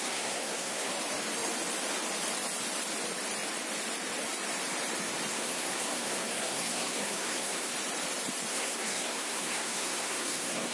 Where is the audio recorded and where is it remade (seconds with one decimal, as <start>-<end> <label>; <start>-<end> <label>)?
0.0-0.9 remade; 0.9-5.3 recorded; 5.3-7.7 remade; 7.7-8.5 recorded; 8.5-10.7 remade